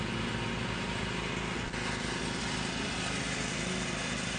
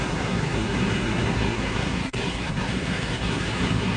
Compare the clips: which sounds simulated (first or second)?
second